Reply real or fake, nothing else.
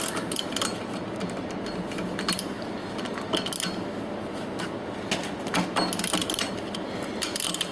real